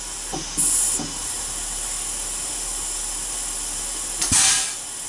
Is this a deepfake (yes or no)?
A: no